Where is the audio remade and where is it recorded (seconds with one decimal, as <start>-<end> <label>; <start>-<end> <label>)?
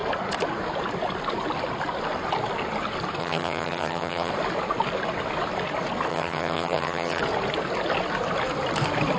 0.0-3.2 recorded; 3.2-4.3 remade; 4.3-6.1 recorded; 6.1-7.2 remade; 7.2-9.2 recorded